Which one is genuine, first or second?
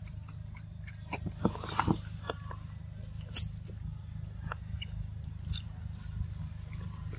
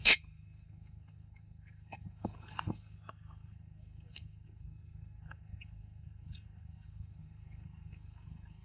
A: first